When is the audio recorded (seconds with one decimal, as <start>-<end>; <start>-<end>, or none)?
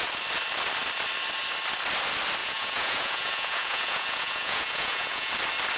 0.0-2.4; 5.3-5.8